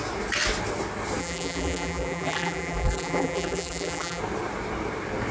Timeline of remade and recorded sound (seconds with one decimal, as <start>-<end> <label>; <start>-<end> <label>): 0.0-1.2 recorded; 1.2-4.2 remade; 4.2-5.3 recorded